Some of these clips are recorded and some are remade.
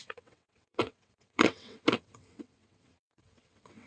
remade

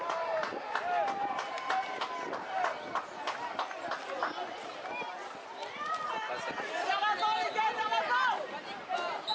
recorded